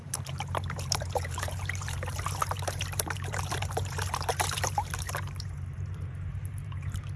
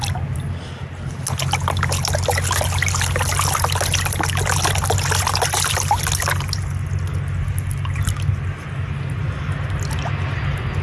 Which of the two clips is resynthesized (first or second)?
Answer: first